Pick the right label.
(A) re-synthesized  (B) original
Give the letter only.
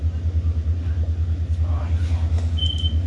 B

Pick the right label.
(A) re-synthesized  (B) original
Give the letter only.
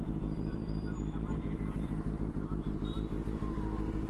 A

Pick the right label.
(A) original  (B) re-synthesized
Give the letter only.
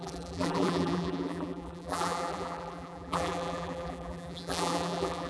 B